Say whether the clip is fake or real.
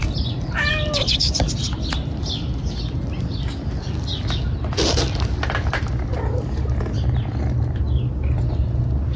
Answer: real